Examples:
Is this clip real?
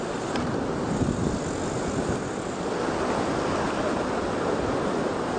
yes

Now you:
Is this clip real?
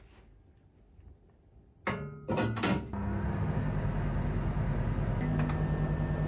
yes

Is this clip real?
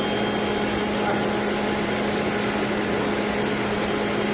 yes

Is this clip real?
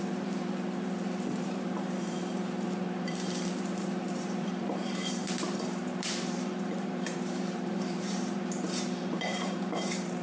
no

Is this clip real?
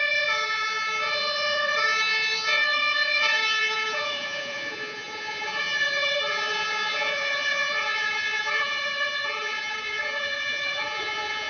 no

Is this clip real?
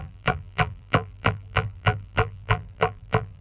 no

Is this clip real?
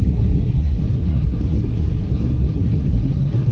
no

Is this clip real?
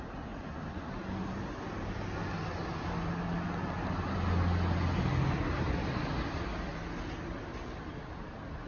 yes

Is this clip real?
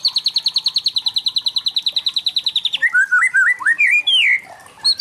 yes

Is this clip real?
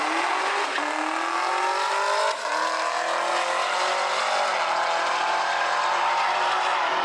yes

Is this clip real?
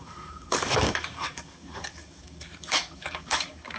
no